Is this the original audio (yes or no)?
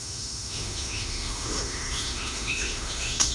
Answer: no